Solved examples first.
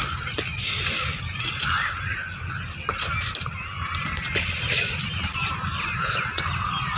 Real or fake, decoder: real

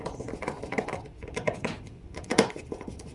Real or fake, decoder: fake, vocoder, Vocos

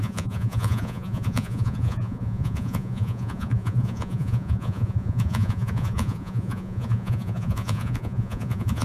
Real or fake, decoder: fake, vocoder, Vocos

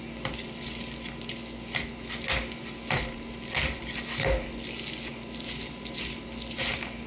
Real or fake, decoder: real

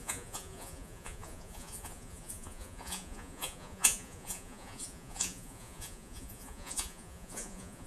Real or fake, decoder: fake, vocoder, Vocos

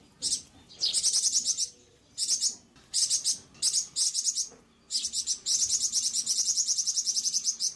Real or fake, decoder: real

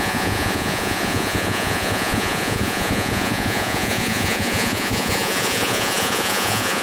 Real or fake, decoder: fake, vocoder, Vocos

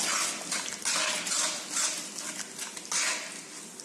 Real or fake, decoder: real